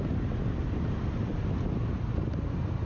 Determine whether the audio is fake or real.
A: real